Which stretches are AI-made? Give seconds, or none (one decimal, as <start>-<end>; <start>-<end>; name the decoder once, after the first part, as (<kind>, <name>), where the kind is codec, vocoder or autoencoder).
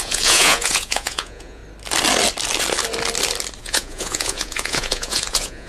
0.0-1.6 (vocoder, Vocos); 3.6-5.7